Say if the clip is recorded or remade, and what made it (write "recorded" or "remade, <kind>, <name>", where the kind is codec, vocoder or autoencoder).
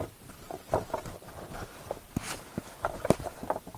remade, vocoder, BigVGAN v2